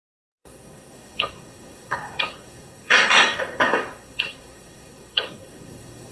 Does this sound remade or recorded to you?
remade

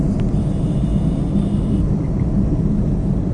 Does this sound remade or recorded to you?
recorded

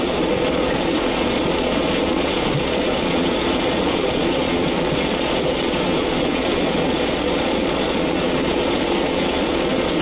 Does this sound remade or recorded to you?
remade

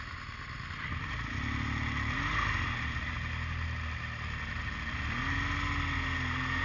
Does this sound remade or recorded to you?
recorded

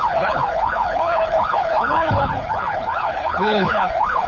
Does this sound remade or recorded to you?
remade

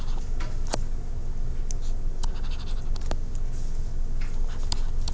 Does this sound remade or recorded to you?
recorded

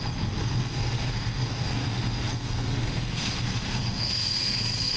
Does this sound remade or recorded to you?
remade